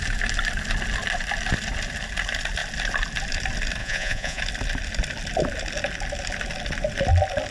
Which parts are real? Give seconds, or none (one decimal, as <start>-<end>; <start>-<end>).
0.0-3.8; 4.4-7.5